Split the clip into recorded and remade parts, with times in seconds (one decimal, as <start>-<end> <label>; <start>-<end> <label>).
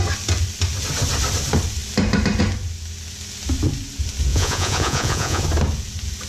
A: 0.0-4.3 recorded; 4.3-5.4 remade; 5.4-6.3 recorded